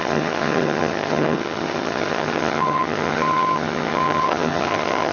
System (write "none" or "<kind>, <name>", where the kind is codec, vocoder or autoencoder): vocoder, HiFi-GAN